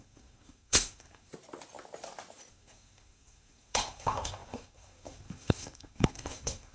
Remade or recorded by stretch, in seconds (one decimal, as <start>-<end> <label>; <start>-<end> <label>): 0.0-1.3 remade; 1.3-2.5 recorded; 2.5-6.7 remade

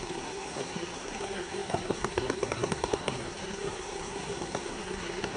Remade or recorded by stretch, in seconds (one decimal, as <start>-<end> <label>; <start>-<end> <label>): 0.0-5.4 remade

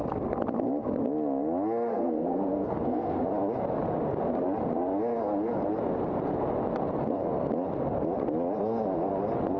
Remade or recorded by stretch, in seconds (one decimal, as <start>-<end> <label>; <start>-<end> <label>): 0.0-1.9 recorded; 1.9-3.2 remade; 3.2-9.6 recorded

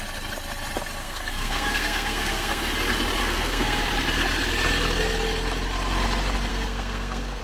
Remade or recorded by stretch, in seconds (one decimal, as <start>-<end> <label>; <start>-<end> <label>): 0.0-1.0 recorded; 1.0-2.6 remade; 2.6-3.2 recorded; 3.2-3.8 remade; 3.8-6.5 recorded; 6.5-7.4 remade

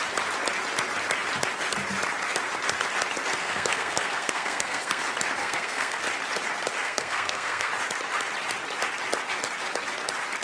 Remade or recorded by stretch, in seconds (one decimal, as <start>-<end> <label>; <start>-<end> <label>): 0.0-3.4 recorded; 3.4-5.0 remade; 5.0-5.4 recorded; 5.4-6.0 remade; 6.0-6.8 recorded; 6.8-7.7 remade; 7.7-10.4 recorded